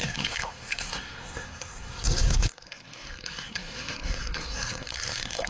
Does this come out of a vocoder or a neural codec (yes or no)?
yes